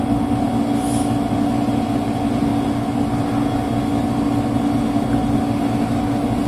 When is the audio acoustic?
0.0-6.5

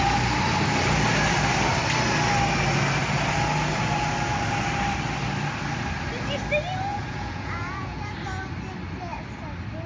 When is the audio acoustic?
0.0-6.9; 8.0-9.9

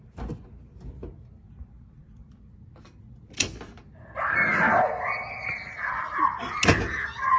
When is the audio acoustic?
0.0-7.4

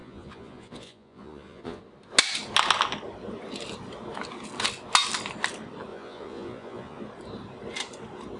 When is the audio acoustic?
1.8-5.9; 7.0-8.4